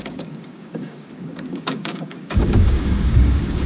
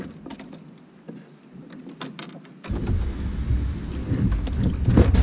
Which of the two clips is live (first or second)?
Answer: second